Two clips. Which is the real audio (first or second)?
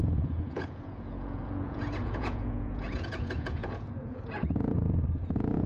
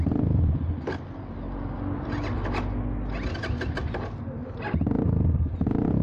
second